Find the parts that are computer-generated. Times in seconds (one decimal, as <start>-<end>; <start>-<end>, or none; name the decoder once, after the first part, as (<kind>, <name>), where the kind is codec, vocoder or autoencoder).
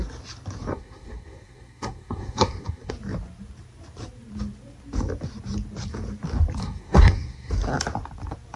0.7-2.9 (codec, SNAC); 6.6-7.5